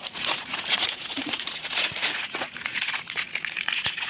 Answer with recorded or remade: remade